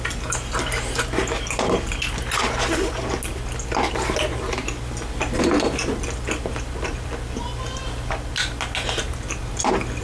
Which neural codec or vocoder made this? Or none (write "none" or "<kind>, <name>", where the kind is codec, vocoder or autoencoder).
none